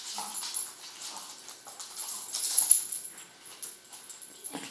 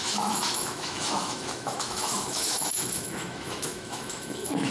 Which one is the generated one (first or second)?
second